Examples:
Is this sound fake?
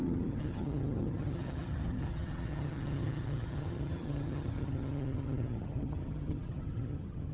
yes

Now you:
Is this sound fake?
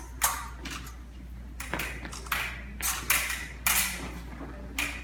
no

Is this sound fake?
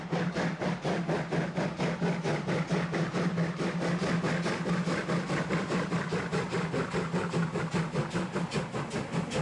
no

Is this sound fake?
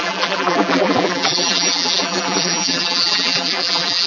yes